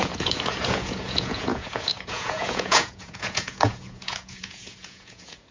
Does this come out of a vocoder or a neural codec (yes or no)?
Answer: yes